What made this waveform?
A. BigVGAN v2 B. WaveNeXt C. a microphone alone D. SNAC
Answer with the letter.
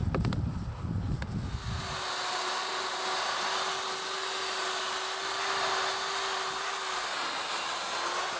C